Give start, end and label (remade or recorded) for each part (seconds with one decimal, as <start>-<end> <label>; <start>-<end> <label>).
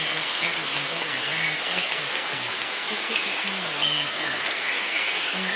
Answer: 0.0-5.6 remade